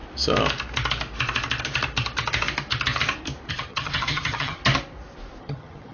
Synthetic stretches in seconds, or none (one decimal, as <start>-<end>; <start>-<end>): 3.5-4.6; 5.4-5.9